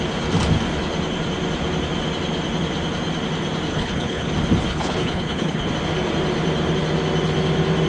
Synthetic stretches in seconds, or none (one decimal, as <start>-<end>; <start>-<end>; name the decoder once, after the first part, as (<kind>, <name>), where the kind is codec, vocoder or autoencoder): 3.7-4.3 (codec, HILCodec); 4.7-5.7